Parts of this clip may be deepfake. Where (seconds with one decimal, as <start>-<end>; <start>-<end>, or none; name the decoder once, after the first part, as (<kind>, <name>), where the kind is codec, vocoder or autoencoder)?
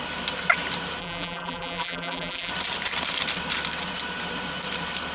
1.0-2.5 (vocoder, BigVGAN v2)